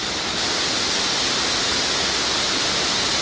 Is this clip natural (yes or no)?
yes